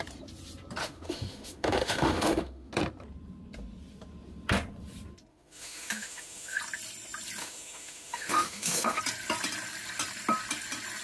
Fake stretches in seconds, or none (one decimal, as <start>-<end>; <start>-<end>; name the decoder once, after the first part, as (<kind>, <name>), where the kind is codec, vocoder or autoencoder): 0.8-2.7 (autoencoder, DAC-VAE); 5.3-6.6; 7.4-9.0